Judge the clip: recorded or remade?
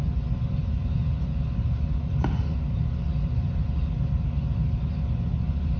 recorded